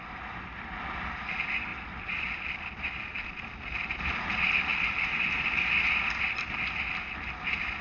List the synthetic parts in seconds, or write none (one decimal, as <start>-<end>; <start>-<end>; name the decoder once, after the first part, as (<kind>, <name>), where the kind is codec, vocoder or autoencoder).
1.7-3.3 (vocoder, BigVGAN v2)